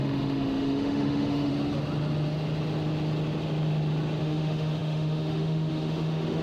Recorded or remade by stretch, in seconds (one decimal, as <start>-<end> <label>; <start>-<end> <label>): 0.0-1.5 remade; 1.5-4.2 recorded; 4.2-6.4 remade